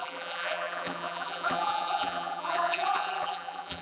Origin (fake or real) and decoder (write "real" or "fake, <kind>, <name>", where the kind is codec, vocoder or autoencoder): fake, vocoder, BigVGAN v2